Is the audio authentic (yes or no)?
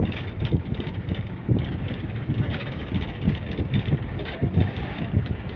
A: no